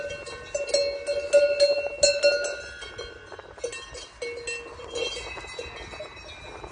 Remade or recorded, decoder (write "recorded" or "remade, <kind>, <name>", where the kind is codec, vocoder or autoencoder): recorded